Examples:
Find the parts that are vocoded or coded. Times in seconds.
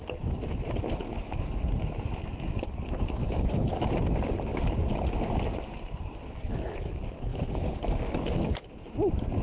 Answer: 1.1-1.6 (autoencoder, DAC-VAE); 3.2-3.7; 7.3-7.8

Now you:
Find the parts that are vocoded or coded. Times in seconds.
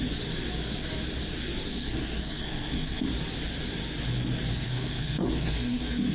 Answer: 1.7-3.1 (codec, SNAC); 4.5-6.1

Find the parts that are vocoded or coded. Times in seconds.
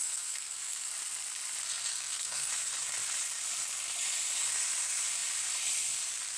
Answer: 0.0-0.9 (codec, SNAC); 1.9-2.5